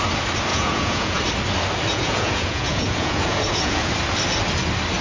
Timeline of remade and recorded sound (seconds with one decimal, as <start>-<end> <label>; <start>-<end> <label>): 0.0-0.5 recorded; 0.5-1.2 remade; 1.2-1.9 recorded; 1.9-3.9 remade; 3.9-5.0 recorded